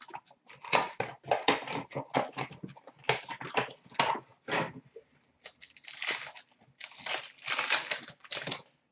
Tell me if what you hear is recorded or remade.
recorded